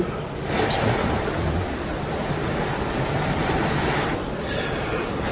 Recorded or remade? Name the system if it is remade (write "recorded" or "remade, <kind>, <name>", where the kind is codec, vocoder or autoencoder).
recorded